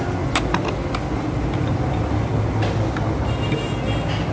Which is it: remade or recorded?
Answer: recorded